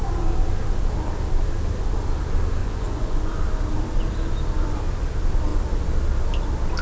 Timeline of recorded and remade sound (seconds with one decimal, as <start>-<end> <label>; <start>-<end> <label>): 0.0-2.6 recorded; 2.6-3.3 remade; 3.3-6.8 recorded